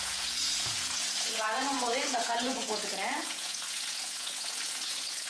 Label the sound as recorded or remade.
remade